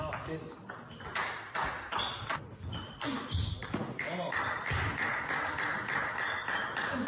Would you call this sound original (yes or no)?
yes